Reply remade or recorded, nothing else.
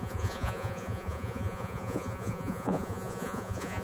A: remade